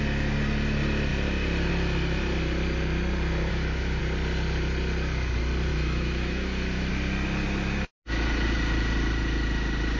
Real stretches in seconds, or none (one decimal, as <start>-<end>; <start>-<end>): 0.0-3.5; 4.0-5.7; 6.9-10.0